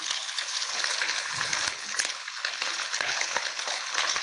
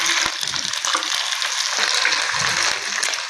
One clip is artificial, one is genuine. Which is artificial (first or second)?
first